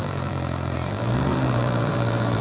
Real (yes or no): no